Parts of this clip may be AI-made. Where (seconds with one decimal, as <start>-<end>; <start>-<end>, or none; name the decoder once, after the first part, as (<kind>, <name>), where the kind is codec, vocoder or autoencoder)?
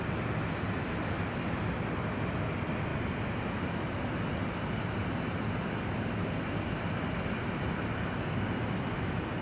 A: none